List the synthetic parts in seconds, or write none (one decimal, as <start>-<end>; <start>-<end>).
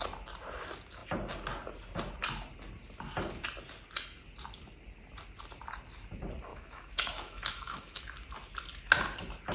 6.5-8.0